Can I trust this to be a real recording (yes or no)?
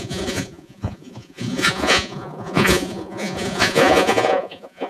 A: no